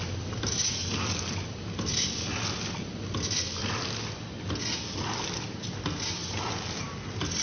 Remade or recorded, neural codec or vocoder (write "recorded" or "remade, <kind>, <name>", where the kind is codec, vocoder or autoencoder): recorded